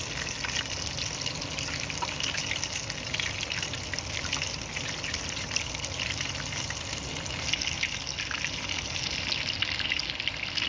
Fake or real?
real